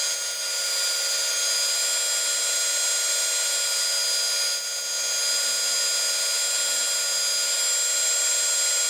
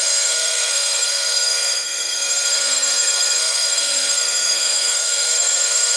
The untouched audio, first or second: first